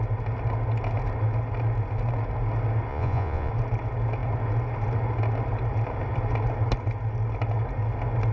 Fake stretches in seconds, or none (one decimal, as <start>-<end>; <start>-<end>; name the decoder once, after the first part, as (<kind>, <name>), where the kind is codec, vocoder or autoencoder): 2.9-3.5 (vocoder, Vocos)